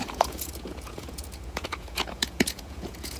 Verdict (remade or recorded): remade